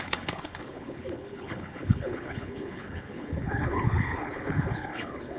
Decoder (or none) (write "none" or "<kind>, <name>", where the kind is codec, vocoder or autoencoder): codec, HILCodec